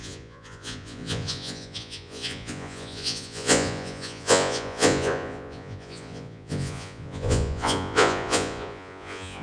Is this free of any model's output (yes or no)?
no